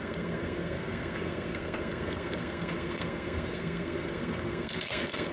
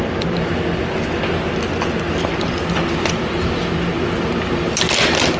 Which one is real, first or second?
second